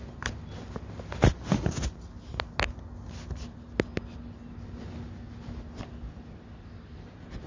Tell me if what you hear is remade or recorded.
recorded